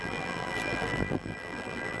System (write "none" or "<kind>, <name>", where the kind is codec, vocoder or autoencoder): vocoder, BigVGAN v2